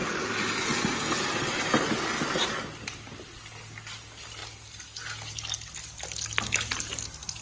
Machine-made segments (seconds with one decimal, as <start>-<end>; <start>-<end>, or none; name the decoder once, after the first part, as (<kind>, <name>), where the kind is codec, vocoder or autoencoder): none